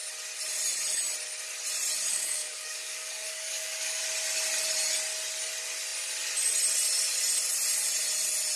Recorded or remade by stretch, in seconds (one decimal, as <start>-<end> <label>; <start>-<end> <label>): 0.0-2.1 recorded; 2.1-4.0 remade; 4.0-8.6 recorded